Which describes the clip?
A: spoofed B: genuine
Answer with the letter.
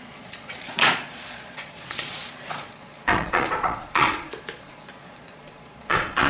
A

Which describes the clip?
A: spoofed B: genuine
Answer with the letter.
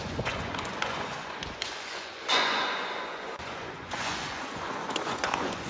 A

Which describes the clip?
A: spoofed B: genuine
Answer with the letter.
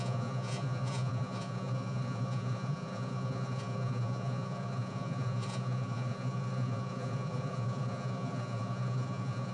A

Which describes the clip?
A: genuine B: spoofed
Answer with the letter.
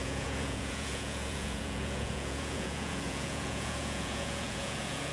B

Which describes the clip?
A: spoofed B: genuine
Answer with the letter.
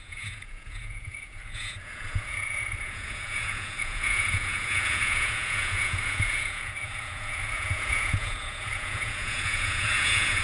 A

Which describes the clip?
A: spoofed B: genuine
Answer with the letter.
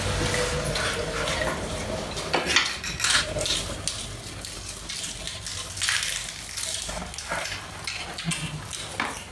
B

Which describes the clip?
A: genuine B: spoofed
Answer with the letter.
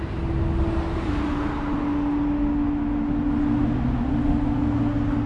A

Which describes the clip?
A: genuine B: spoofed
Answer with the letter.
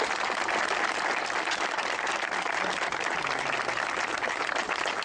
A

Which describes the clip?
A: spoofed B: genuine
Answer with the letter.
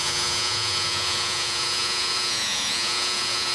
A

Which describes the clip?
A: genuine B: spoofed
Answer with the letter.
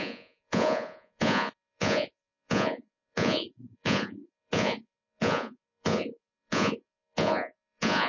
B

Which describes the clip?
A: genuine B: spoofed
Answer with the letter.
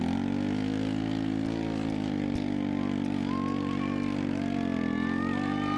A